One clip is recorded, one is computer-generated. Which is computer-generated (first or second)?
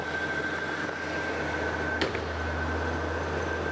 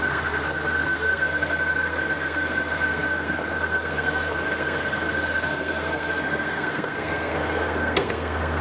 second